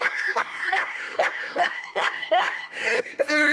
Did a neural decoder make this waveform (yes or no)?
yes